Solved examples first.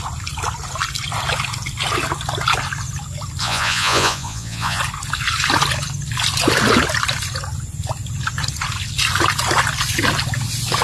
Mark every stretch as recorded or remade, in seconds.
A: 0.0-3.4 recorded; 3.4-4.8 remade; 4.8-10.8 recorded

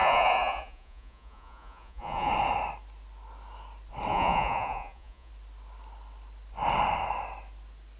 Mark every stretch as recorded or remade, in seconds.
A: 0.0-2.3 remade; 2.3-4.1 recorded; 4.1-5.3 remade; 5.3-8.0 recorded

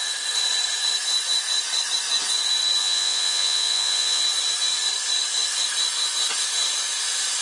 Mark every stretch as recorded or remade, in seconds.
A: 0.0-2.8 recorded; 2.8-4.2 remade; 4.2-7.4 recorded